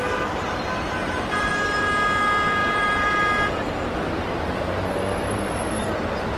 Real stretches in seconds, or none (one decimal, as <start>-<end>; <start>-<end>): 0.6-1.0; 1.5-2.6